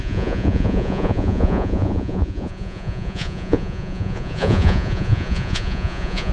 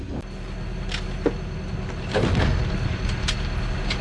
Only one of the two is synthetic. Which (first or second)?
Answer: first